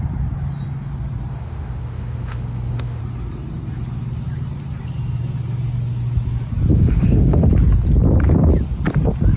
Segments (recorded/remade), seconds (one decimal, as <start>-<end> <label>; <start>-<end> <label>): 0.0-1.3 recorded; 1.3-3.0 remade; 3.0-6.7 recorded; 6.7-7.5 remade; 7.5-9.4 recorded